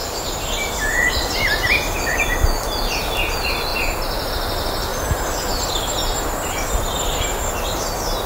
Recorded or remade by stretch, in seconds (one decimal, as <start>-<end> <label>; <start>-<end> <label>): 0.0-1.4 remade; 1.4-3.7 recorded; 3.7-4.3 remade; 4.3-4.9 recorded; 4.9-7.5 remade; 7.5-8.3 recorded